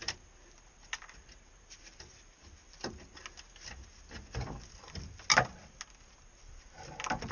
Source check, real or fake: real